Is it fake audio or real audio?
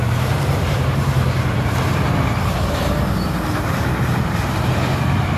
fake